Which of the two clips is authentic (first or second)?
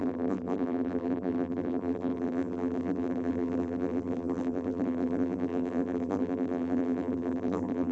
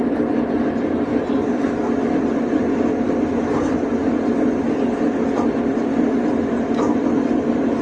second